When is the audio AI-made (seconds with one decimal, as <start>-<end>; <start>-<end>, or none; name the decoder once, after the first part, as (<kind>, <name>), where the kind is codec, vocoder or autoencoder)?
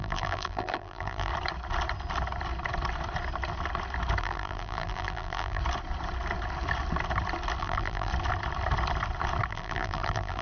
0.0-1.3 (vocoder, BigVGAN v2); 4.2-5.6; 7.6-8.1; 9.5-10.4